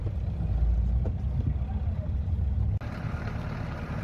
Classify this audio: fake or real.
real